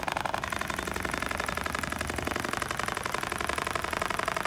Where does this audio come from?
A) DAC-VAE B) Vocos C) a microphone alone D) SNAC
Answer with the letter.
C